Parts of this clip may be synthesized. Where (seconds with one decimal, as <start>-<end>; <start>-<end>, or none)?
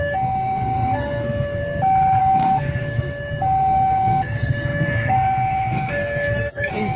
0.0-1.6; 2.2-7.0